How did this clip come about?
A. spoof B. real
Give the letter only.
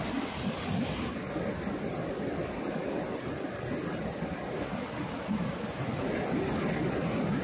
B